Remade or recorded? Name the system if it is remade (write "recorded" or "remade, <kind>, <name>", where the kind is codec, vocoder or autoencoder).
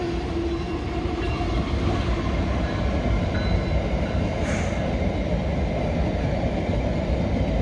recorded